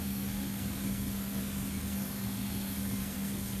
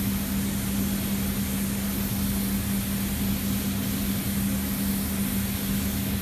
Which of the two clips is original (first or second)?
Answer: second